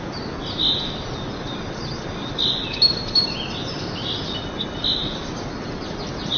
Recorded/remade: recorded